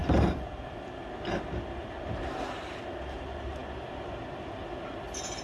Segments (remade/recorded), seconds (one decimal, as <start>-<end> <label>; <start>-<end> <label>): 0.0-3.6 recorded; 3.6-4.8 remade; 4.8-5.4 recorded